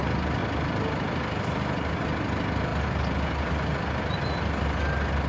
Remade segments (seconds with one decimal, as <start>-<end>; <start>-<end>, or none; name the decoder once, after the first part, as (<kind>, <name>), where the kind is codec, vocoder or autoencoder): 0.4-1.6 (vocoder, BigVGAN v2)